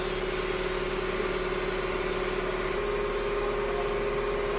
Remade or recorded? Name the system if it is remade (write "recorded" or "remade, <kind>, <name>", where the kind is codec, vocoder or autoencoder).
recorded